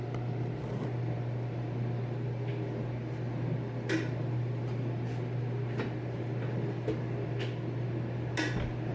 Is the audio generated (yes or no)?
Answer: no